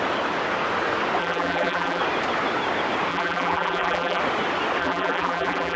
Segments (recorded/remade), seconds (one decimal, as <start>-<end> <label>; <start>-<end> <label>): 0.0-1.2 recorded; 1.2-2.0 remade; 2.0-3.1 recorded; 3.1-4.2 remade; 4.2-4.8 recorded; 4.8-5.8 remade